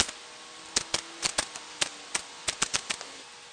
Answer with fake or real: real